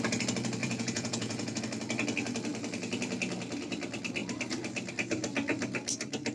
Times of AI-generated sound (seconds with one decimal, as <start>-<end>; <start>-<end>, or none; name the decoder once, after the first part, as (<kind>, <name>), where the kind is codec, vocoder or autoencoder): 0.6-1.6 (vocoder, Vocos)